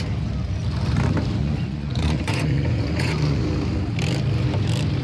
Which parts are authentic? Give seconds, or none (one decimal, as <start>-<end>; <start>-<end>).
0.0-1.4; 3.4-5.0